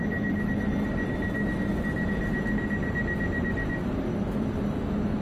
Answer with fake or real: real